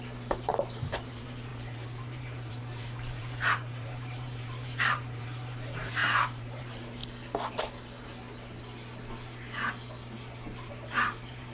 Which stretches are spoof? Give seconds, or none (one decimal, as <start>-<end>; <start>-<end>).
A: 0.0-7.0; 10.7-11.5